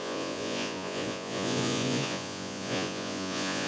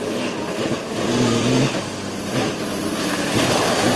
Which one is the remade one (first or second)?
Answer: first